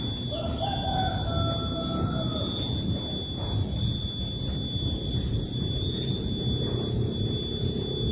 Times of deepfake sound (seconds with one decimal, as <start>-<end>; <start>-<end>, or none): 5.1-6.1